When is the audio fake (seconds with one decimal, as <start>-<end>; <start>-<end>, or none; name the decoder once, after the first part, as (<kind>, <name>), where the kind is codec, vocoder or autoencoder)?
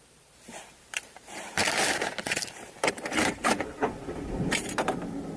0.0-5.4 (vocoder, BigVGAN v2)